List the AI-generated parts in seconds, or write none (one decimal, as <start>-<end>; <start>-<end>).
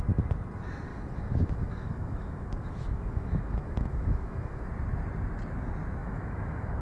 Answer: 0.9-4.6; 6.0-6.8